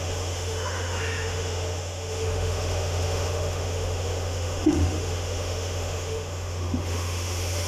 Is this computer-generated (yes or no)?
yes